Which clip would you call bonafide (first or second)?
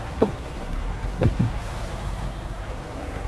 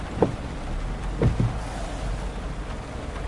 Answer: second